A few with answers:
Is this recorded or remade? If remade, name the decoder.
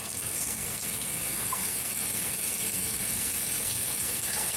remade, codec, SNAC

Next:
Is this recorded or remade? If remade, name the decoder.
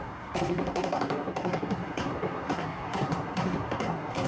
remade, codec, SNAC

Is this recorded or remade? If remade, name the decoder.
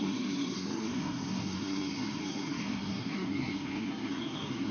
remade, codec, SNAC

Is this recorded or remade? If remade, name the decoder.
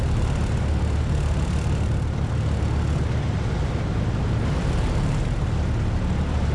recorded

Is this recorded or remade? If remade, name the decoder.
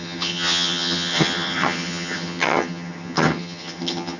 remade, vocoder, HiFi-GAN